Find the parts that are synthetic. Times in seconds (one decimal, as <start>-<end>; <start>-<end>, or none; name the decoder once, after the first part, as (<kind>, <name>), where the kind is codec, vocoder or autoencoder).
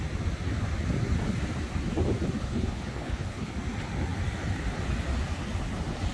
2.4-3.5 (codec, HILCodec)